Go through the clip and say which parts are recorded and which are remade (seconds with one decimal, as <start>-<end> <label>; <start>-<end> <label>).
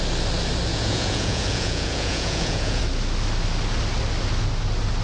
0.0-0.7 recorded; 0.7-2.8 remade; 2.8-5.0 recorded